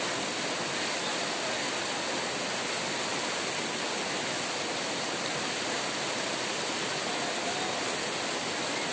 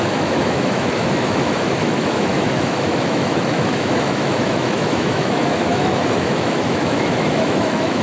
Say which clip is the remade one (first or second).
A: second